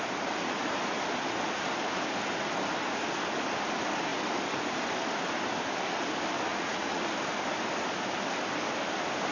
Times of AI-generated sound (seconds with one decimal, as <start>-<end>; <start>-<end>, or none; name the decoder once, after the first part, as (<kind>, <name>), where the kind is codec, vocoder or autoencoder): 6.5-7.0 (vocoder, Vocos)